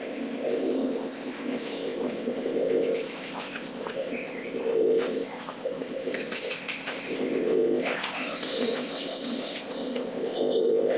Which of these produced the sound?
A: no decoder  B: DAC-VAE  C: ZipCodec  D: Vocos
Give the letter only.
C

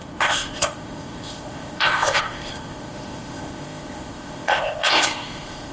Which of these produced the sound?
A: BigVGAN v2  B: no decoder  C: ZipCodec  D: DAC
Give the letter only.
C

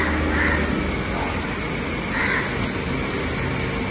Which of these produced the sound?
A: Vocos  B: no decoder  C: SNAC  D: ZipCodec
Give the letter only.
B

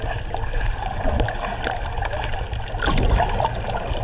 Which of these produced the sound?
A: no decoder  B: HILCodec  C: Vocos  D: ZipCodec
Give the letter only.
A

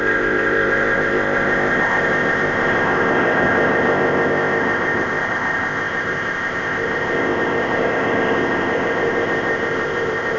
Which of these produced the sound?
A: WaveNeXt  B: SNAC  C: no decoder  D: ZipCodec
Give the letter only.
D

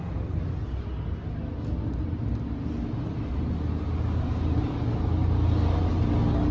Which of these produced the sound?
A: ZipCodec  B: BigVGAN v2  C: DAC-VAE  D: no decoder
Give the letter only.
D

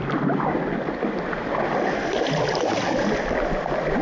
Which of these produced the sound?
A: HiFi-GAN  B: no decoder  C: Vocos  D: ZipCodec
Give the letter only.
B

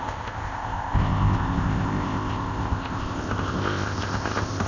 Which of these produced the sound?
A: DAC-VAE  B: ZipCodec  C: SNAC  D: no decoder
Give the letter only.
B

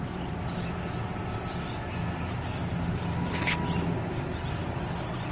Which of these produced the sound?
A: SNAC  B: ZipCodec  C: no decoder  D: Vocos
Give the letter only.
C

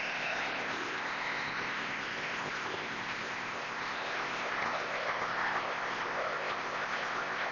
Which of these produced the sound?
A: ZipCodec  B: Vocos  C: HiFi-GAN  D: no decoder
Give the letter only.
A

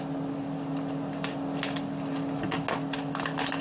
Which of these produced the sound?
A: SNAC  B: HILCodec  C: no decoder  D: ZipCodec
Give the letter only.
C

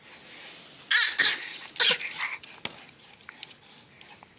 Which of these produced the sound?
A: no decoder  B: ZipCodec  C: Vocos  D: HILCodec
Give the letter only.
A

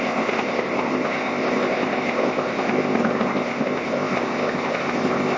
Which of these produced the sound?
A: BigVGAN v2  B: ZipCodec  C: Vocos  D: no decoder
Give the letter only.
B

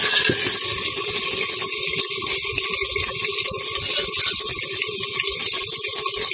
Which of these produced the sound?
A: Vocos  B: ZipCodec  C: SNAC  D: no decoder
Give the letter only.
D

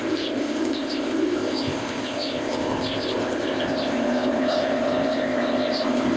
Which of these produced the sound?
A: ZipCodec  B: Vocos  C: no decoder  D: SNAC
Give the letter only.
A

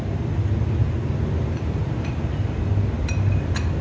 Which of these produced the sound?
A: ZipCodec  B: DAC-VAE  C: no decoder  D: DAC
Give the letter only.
C